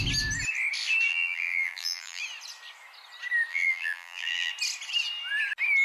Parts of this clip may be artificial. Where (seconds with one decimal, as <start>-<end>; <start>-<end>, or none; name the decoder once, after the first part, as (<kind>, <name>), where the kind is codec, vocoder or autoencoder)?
1.1-2.2 (vocoder, BigVGAN v2); 3.5-4.5